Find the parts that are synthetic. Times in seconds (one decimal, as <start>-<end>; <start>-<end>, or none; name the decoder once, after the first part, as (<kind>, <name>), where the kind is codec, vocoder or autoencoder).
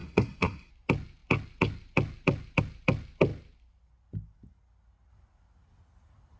0.0-0.7 (codec, SNAC)